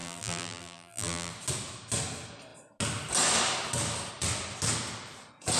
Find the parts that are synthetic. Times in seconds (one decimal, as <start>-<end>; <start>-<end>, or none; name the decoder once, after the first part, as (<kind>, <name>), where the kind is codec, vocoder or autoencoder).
0.0-1.3 (vocoder, BigVGAN v2)

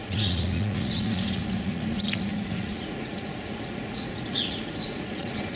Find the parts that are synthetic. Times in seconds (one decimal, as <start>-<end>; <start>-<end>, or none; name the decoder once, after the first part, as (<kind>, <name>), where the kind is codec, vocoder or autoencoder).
0.0-5.6 (vocoder, Vocos)

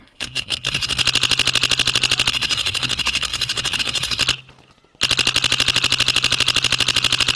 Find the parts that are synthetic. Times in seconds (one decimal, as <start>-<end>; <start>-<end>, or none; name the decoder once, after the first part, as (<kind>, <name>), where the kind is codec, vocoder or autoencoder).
0.0-1.0 (codec, SNAC); 2.3-4.2

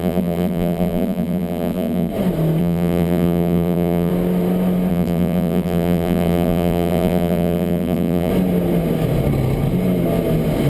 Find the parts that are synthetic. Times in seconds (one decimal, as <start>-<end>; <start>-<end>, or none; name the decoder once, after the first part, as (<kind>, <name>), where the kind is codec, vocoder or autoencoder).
0.0-2.1 (vocoder, BigVGAN v2); 2.6-4.1; 4.9-8.3

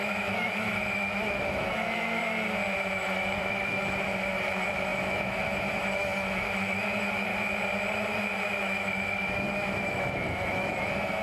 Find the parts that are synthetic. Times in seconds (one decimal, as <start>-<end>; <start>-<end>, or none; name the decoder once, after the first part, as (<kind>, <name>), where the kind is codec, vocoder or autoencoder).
0.0-2.2 (autoencoder, DAC-VAE); 2.8-7.3; 8.6-11.2

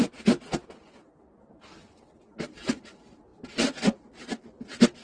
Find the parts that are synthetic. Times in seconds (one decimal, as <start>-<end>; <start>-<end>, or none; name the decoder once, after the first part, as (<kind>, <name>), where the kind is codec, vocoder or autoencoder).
none

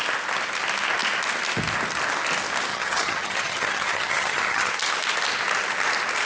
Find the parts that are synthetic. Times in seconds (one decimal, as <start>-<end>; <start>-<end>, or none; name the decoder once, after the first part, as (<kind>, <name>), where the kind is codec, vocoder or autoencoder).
2.7-4.7 (vocoder, HiFi-GAN)